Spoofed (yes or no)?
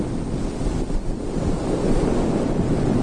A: no